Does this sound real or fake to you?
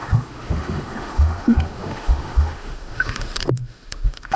fake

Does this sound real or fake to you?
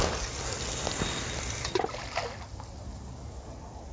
real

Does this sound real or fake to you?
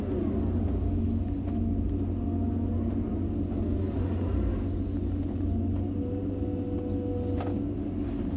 real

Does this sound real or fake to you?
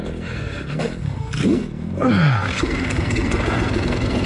fake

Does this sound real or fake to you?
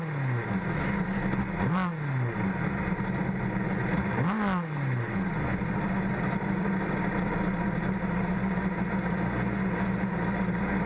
real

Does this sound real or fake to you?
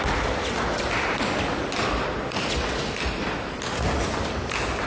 real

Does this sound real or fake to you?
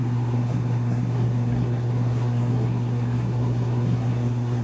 fake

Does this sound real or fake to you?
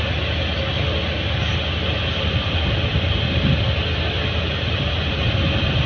real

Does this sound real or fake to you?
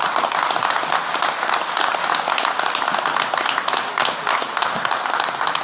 real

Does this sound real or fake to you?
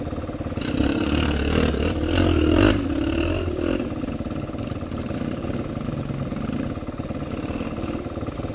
real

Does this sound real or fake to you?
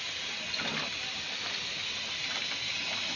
real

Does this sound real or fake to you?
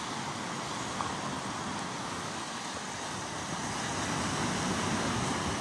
real